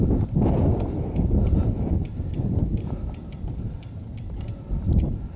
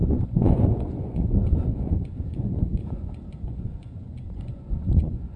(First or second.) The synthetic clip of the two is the second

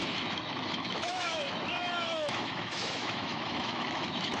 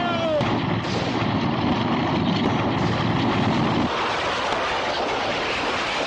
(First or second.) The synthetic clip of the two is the first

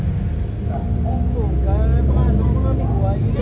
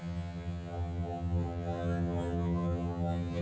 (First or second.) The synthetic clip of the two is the second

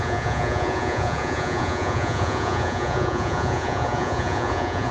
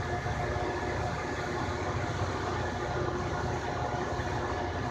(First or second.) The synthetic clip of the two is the first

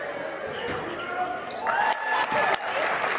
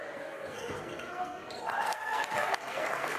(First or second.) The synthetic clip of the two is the second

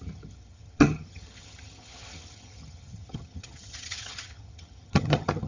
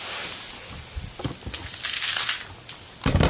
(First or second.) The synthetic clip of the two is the first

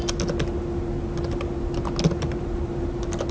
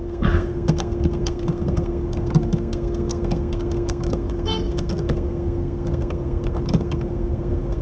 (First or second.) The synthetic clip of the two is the second